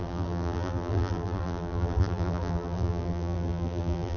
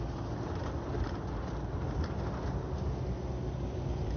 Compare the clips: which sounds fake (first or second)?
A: first